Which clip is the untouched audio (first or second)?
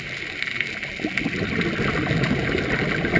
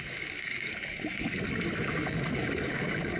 first